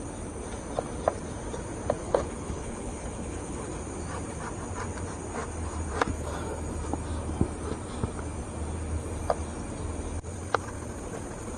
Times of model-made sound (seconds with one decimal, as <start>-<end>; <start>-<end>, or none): 2.0-3.7

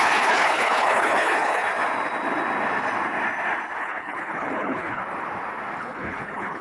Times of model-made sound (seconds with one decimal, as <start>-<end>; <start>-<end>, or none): 0.0-1.6; 3.8-5.0; 5.8-6.6

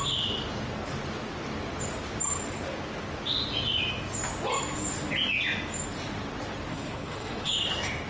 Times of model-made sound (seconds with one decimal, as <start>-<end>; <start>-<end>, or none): 6.7-7.5

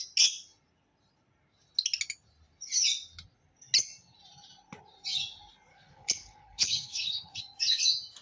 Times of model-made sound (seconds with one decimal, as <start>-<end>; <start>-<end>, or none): 5.7-7.4

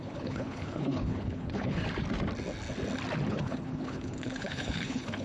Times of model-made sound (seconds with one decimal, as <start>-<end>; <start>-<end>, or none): 0.0-1.8; 3.3-5.2

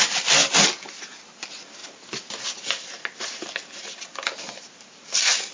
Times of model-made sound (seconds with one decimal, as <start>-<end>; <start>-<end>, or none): none

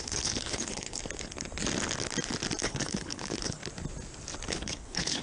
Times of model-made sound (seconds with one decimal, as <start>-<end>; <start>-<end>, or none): 0.0-1.0; 2.6-3.6; 4.5-5.2